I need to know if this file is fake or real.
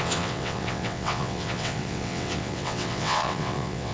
fake